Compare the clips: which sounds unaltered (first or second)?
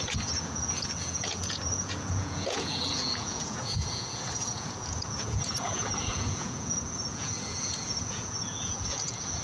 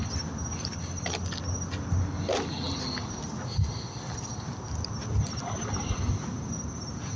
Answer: second